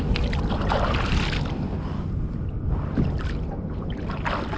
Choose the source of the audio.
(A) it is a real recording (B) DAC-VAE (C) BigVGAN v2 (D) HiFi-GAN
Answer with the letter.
A